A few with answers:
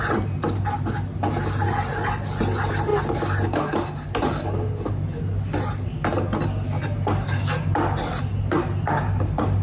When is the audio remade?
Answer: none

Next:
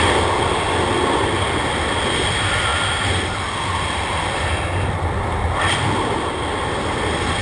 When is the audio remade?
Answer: none